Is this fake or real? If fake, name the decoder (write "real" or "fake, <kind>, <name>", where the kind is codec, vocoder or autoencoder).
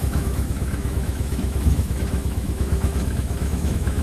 fake, autoencoder, DAC-VAE